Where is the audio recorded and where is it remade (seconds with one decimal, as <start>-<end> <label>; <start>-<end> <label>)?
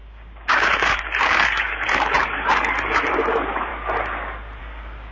0.0-3.7 remade; 3.7-4.6 recorded; 4.6-5.1 remade